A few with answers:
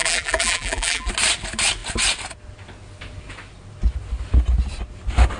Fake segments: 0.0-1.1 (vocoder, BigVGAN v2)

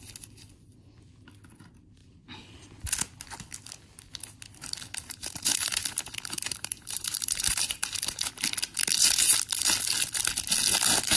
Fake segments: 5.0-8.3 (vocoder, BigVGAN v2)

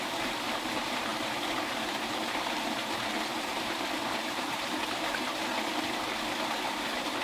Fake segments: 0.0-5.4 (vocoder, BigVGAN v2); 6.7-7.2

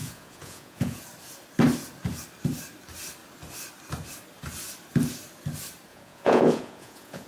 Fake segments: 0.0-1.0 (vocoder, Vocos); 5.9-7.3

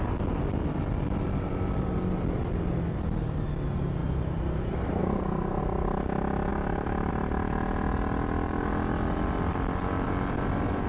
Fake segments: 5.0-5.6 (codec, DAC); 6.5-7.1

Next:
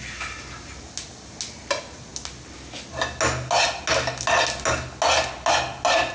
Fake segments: none